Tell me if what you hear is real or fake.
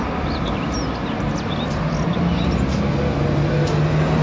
real